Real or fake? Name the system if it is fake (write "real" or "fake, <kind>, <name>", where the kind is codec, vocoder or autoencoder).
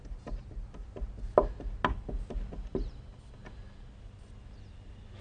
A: real